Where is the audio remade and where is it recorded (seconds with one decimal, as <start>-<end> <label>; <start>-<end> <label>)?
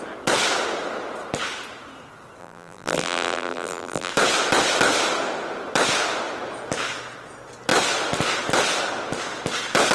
0.0-2.4 recorded; 2.4-4.1 remade; 4.1-9.9 recorded